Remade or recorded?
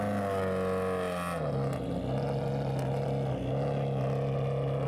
recorded